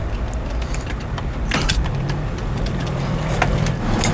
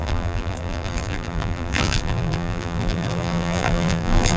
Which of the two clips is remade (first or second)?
second